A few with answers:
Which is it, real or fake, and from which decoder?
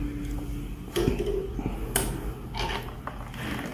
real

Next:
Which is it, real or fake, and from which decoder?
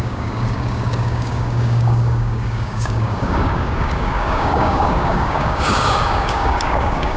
fake, codec, DAC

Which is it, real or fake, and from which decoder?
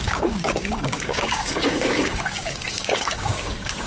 fake, codec, DAC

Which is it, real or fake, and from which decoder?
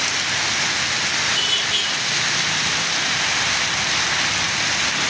real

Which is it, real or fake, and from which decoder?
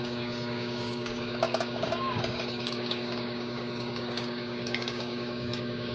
fake, codec, DAC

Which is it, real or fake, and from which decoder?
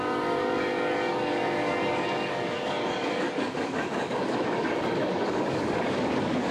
fake, codec, DAC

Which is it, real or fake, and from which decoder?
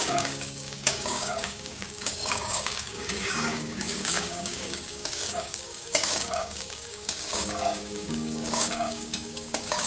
fake, codec, DAC